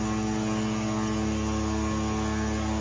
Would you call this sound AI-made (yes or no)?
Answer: no